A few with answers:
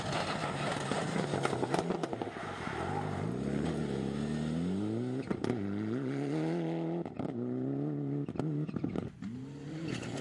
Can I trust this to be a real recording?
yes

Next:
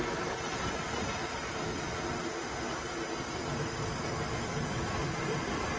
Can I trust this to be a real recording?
yes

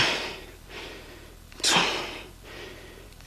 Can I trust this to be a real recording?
yes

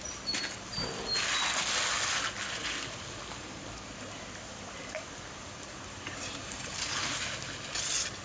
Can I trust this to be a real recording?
yes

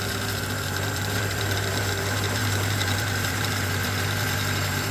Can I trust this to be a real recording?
no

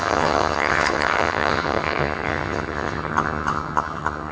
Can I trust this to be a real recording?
no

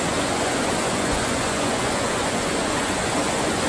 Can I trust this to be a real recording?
no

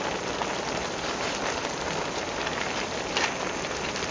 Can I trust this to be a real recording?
yes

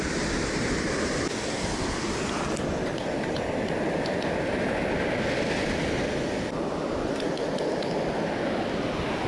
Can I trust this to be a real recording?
yes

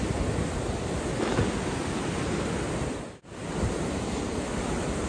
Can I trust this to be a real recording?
yes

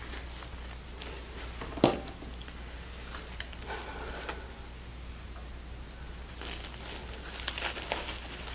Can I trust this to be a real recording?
yes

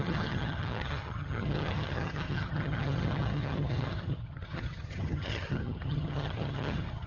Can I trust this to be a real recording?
no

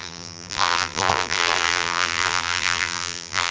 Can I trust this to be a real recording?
no